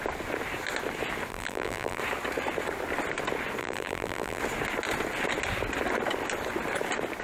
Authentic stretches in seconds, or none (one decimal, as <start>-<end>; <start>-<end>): 0.0-1.3; 2.0-3.6; 4.4-7.2